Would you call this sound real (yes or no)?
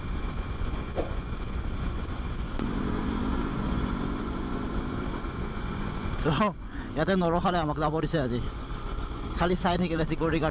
no